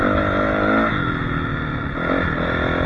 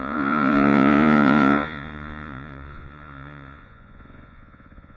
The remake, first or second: second